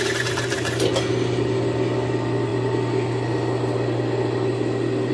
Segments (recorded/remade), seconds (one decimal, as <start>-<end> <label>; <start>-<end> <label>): 0.0-5.1 recorded